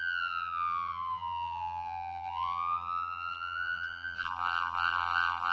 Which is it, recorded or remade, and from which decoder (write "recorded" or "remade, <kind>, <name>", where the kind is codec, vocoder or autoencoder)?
remade, vocoder, BigVGAN v2